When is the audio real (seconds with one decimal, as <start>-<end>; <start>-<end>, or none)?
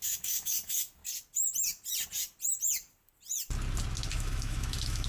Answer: 1.0-4.1